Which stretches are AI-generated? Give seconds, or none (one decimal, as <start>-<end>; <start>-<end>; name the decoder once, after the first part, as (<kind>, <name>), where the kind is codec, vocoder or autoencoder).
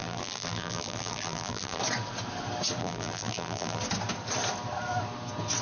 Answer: 0.0-1.8 (vocoder, BigVGAN v2); 2.8-3.8